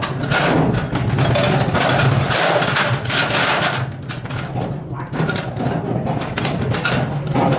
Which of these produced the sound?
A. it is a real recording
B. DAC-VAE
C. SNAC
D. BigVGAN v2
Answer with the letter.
A